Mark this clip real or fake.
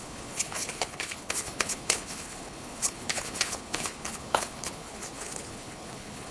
fake